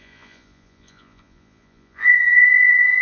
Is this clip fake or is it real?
fake